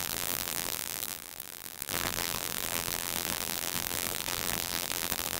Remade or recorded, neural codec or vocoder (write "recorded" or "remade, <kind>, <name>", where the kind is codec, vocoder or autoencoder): remade, vocoder, BigVGAN v2